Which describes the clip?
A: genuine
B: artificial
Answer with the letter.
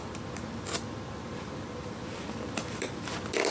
B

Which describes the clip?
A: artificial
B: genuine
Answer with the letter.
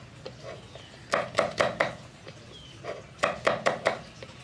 B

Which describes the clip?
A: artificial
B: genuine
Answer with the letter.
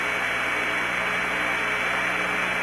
B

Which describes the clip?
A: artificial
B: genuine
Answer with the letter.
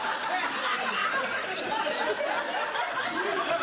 B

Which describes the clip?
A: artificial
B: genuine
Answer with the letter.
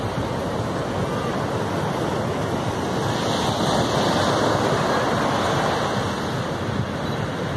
B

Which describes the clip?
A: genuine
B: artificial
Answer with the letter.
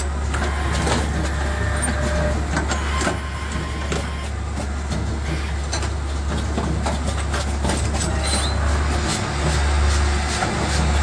A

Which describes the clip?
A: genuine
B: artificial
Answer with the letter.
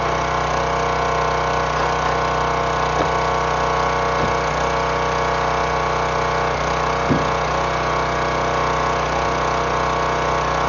A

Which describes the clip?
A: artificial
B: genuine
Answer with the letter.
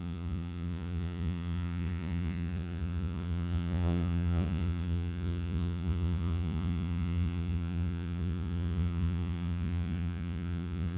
A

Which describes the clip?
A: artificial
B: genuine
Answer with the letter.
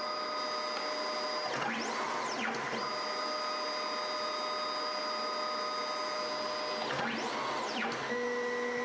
B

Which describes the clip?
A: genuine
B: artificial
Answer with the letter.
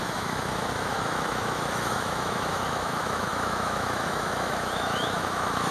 B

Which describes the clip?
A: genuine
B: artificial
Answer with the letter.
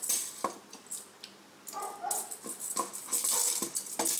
A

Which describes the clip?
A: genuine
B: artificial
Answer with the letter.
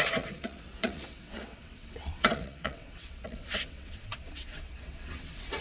B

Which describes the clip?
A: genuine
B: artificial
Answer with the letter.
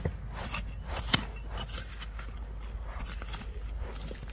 A